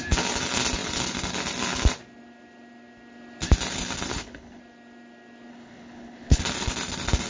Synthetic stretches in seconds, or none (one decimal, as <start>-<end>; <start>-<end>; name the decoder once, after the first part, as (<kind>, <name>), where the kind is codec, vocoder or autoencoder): 4.1-4.6 (codec, HILCodec); 5.5-6.4